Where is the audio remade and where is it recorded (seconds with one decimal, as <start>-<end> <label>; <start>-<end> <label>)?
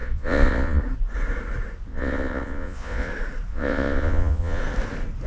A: 0.0-0.8 remade; 0.8-1.9 recorded; 1.9-3.1 remade; 3.1-3.5 recorded; 3.5-4.6 remade; 4.6-5.3 recorded